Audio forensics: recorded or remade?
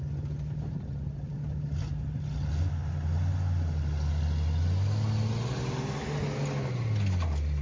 recorded